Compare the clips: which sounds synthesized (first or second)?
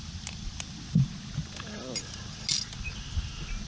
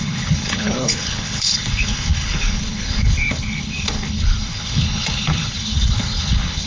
second